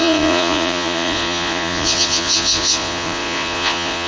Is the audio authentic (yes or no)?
no